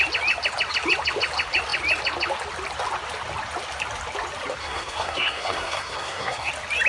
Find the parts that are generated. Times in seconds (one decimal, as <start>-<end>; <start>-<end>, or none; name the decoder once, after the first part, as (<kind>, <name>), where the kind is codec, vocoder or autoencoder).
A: 4.6-6.5 (codec, SNAC)